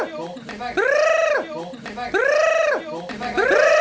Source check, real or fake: real